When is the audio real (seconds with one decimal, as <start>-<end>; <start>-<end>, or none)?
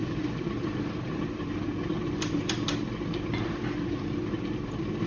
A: 0.0-5.1